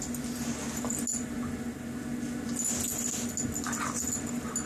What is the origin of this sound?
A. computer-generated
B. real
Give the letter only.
B